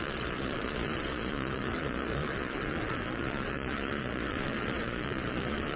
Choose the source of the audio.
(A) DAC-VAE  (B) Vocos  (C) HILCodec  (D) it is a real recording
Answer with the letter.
B